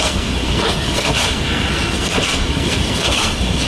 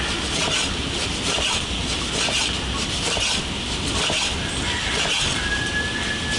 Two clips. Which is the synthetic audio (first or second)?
first